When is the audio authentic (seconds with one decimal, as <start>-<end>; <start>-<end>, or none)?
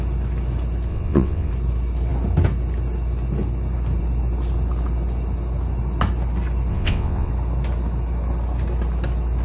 0.0-0.9; 1.5-6.7; 7.3-9.4